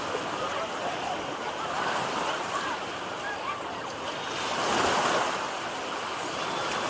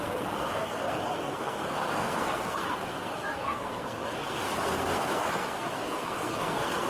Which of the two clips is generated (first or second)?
second